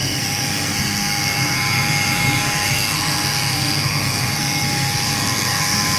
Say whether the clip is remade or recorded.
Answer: remade